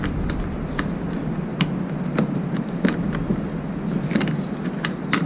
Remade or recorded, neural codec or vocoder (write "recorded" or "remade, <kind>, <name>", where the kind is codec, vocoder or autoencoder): recorded